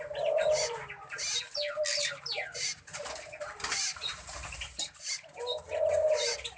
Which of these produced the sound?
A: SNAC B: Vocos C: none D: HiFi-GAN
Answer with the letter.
C